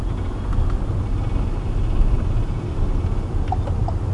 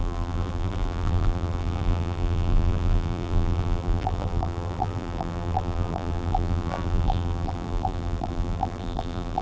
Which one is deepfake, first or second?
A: second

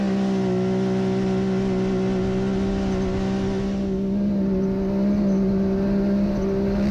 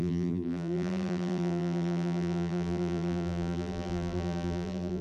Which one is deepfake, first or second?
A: second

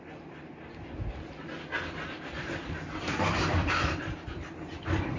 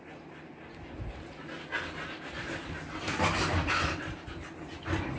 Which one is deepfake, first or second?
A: first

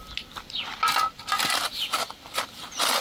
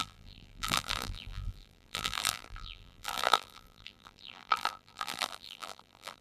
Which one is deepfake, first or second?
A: second